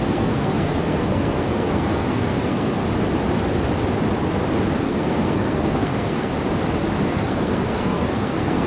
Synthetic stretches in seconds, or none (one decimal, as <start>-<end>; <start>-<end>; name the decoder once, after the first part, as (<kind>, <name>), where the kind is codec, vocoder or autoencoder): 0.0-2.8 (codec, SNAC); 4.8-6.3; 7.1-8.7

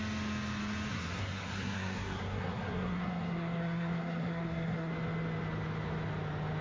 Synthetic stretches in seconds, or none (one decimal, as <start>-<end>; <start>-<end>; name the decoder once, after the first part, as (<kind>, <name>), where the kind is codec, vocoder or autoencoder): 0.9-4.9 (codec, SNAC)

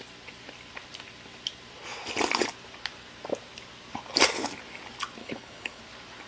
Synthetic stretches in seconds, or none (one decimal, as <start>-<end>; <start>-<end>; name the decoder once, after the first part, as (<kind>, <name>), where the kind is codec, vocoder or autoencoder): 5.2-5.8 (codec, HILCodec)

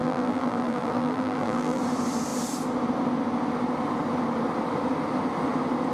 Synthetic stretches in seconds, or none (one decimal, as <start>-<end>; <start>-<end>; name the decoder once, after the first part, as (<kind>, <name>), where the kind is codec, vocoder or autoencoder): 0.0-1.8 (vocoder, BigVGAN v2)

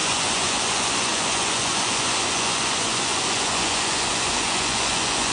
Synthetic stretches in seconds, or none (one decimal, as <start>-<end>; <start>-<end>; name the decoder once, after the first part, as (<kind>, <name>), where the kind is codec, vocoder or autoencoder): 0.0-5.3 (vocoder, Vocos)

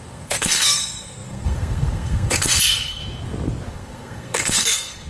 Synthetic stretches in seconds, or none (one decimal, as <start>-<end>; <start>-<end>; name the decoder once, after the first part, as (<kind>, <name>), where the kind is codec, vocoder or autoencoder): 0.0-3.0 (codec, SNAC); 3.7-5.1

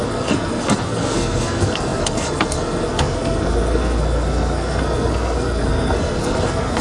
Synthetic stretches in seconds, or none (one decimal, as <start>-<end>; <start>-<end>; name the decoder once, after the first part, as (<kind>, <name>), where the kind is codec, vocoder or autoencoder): 0.0-6.8 (codec, SNAC)

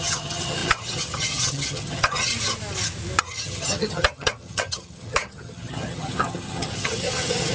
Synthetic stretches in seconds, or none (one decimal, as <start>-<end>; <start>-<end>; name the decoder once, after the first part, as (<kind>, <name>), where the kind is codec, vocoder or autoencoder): 0.0-2.3 (vocoder, HiFi-GAN); 3.2-7.5